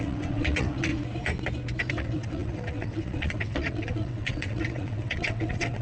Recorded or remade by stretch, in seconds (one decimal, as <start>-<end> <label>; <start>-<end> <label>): 0.0-0.9 remade; 0.9-1.9 recorded; 1.9-5.8 remade